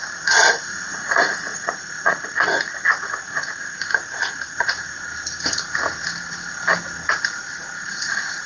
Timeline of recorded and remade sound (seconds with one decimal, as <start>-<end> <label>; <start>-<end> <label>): 0.0-5.1 remade; 5.1-7.4 recorded; 7.4-8.5 remade